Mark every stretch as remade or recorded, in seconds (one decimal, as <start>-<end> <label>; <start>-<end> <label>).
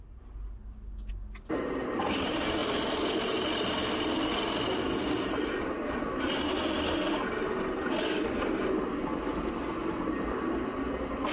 0.0-11.3 recorded